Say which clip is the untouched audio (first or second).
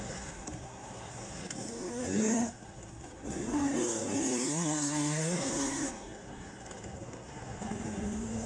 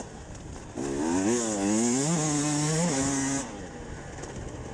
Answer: second